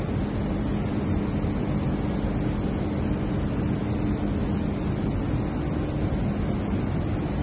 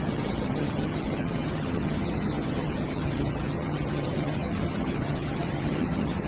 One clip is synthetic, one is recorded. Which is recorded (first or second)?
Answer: first